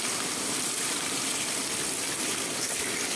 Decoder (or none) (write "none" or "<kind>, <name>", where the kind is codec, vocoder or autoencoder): none